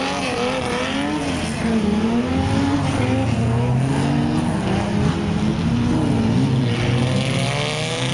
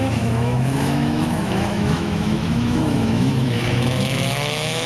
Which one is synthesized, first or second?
second